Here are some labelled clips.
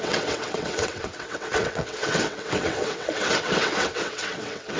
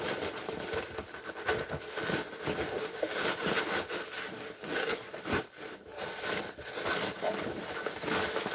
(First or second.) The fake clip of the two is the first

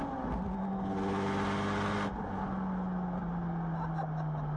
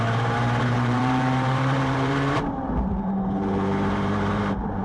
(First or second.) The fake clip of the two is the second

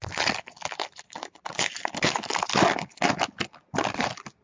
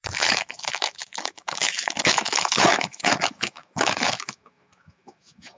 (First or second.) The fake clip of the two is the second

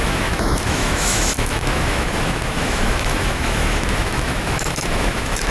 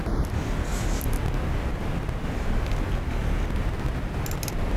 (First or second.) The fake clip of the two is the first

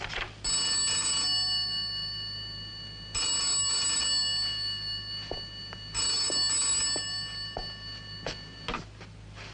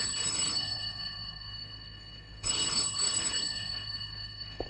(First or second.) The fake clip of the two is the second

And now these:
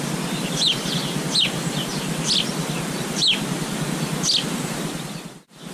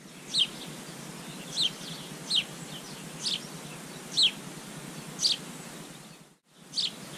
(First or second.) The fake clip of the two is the first